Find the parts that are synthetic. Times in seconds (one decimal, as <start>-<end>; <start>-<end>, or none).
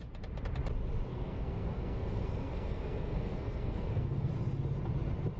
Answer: 1.1-4.3